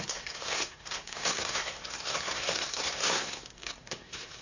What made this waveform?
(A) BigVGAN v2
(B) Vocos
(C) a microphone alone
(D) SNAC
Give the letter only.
D